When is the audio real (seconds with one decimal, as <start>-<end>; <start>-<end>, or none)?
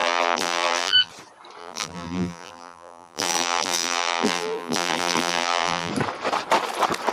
1.1-1.6; 5.9-7.1